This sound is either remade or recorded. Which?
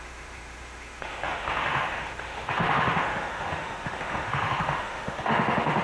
remade